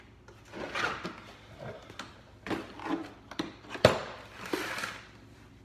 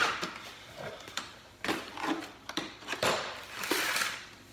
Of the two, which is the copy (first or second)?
second